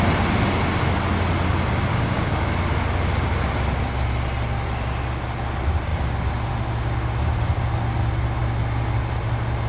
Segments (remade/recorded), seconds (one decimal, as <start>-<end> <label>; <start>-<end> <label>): 0.0-1.9 recorded; 1.9-2.7 remade; 2.7-9.7 recorded